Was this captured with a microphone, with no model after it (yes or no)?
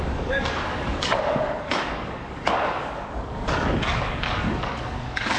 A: no